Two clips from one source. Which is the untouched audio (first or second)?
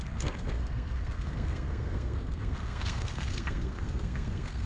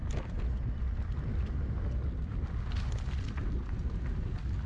second